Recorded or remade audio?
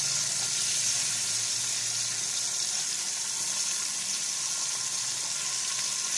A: recorded